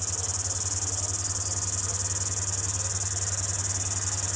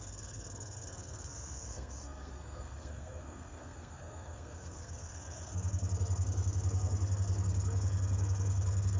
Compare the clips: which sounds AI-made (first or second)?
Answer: second